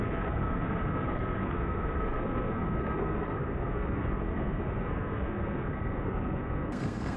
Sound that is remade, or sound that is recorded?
remade